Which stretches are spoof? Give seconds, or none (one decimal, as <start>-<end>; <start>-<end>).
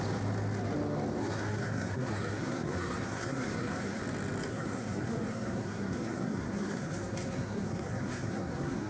1.2-4.0; 4.5-8.9